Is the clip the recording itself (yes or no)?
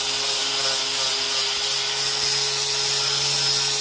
yes